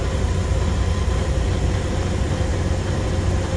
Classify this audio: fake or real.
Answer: real